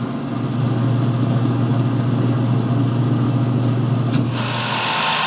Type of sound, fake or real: real